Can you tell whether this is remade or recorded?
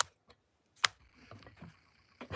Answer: recorded